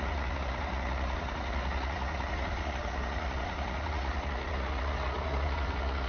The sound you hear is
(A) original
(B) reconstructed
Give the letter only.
B